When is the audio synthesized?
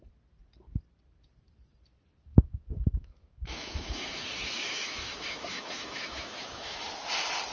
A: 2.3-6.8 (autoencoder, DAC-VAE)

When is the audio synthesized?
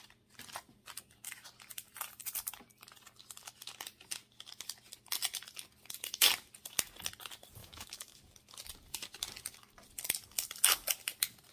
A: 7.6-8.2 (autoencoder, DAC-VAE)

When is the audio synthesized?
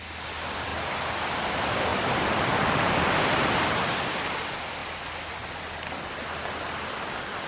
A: 1.9-2.8 (vocoder, BigVGAN v2)